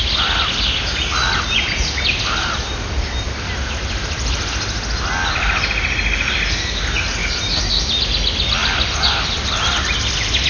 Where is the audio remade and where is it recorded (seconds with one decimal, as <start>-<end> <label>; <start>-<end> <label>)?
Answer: 0.0-7.2 recorded; 7.2-7.7 remade; 7.7-10.5 recorded